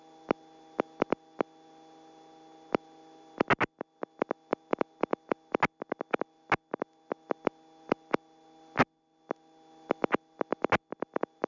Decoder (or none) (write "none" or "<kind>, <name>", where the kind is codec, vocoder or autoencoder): none